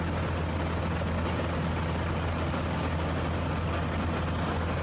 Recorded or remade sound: recorded